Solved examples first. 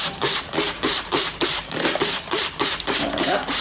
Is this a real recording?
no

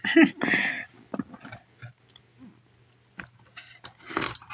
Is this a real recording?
yes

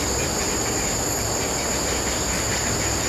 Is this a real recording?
yes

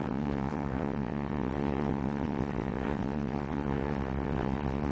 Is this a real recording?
no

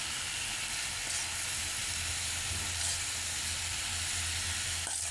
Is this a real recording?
yes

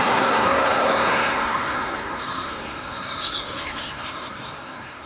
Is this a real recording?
no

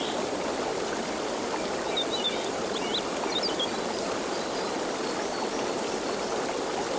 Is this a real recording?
yes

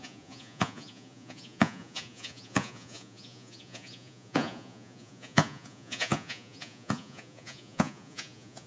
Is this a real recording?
no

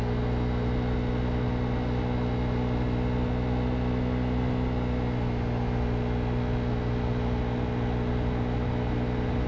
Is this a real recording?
yes